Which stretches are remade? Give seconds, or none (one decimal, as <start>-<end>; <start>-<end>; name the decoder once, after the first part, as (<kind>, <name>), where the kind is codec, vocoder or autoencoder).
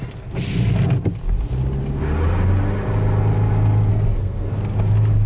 3.9-4.6 (codec, SNAC)